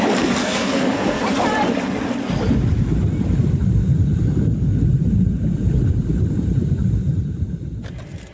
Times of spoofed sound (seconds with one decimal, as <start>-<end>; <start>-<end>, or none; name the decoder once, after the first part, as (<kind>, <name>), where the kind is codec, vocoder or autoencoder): 0.4-1.2 (codec, SNAC)

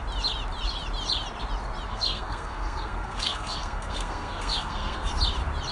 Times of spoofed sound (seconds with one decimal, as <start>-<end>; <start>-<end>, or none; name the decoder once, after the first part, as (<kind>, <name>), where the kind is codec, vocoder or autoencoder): 1.9-5.1 (codec, SNAC)